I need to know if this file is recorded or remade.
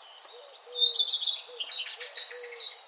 recorded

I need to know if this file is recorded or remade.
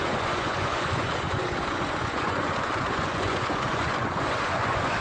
remade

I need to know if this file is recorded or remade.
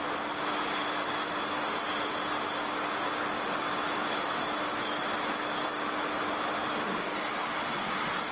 recorded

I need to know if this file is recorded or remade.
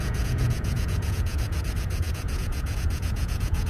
remade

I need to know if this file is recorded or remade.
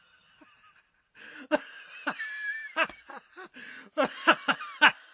recorded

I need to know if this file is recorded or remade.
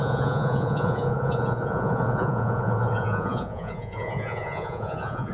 remade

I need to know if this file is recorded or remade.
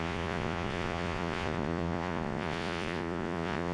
remade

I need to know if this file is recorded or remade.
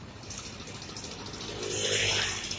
recorded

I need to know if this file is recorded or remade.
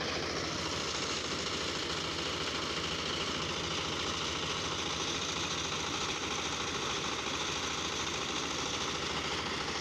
recorded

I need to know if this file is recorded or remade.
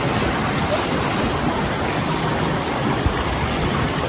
recorded